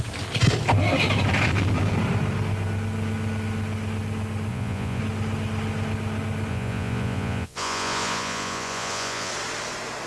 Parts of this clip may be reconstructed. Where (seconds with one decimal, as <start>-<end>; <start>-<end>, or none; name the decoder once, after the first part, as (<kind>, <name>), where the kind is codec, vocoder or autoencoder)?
4.5-5.0 (vocoder, Vocos); 6.5-9.3